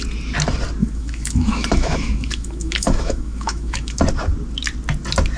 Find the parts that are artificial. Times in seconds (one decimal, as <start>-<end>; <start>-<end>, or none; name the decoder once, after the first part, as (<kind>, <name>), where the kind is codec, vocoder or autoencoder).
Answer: 0.8-4.0 (autoencoder, DAC-VAE)